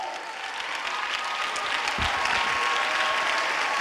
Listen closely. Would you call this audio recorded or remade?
recorded